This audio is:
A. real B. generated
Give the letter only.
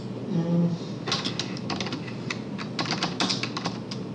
A